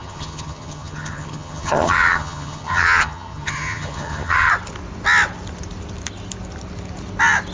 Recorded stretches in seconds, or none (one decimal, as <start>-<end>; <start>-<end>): 4.5-7.5